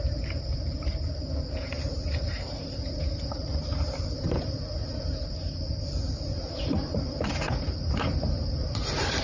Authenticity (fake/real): fake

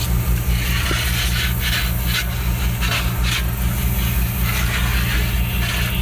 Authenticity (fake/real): real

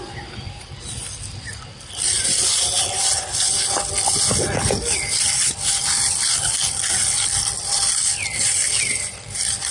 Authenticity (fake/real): fake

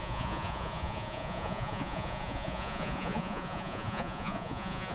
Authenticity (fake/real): fake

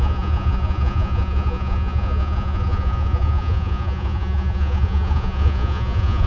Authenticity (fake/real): fake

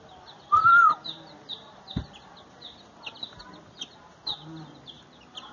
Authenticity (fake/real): real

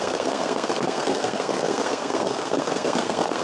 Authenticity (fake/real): fake